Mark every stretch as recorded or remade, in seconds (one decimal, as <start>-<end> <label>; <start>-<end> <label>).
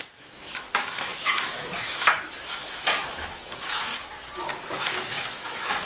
0.0-3.9 remade; 3.9-4.7 recorded; 4.7-5.9 remade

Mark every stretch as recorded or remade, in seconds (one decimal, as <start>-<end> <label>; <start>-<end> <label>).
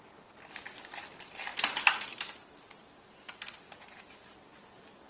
0.0-5.1 recorded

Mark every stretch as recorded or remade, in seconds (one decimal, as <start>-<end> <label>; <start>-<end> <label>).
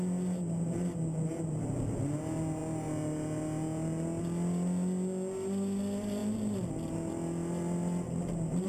0.0-8.7 recorded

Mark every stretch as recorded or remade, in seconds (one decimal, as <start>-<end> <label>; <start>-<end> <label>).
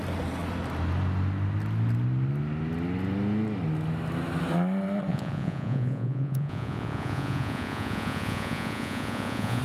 0.0-5.1 recorded; 5.1-9.6 remade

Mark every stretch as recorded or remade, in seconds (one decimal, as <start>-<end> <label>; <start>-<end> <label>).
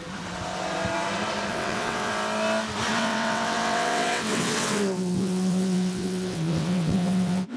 0.0-1.5 recorded; 1.5-2.1 remade; 2.1-2.9 recorded; 2.9-7.6 remade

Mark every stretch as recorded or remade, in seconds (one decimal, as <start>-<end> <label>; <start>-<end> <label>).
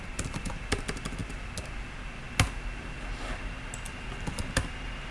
0.0-5.1 recorded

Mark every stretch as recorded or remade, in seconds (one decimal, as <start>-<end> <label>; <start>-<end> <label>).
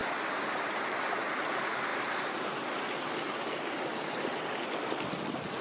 0.0-5.6 recorded